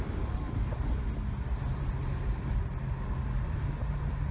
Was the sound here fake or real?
real